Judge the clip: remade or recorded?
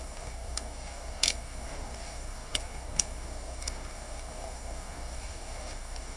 remade